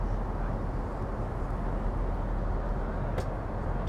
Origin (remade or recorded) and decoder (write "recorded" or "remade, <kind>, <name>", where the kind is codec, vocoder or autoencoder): recorded